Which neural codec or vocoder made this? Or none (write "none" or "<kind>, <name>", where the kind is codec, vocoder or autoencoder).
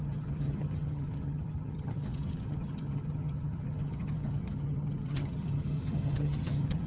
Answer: vocoder, HiFi-GAN